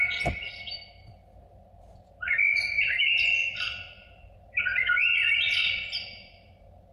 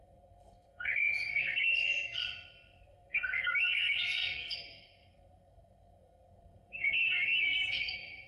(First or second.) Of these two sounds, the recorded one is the first